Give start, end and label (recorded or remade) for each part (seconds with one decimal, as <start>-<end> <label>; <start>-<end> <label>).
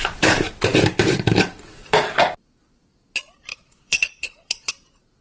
0.0-3.5 recorded; 3.5-4.7 remade; 4.7-5.2 recorded